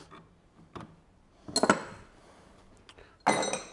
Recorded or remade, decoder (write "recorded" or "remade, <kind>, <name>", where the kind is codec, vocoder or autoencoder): recorded